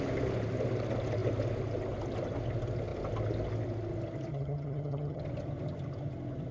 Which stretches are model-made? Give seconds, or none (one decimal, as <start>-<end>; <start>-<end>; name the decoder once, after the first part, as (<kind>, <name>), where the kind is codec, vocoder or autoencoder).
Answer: 4.3-5.2 (vocoder, HiFi-GAN)